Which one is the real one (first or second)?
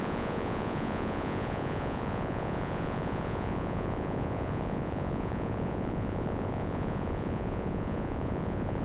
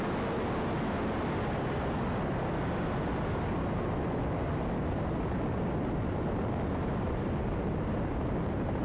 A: second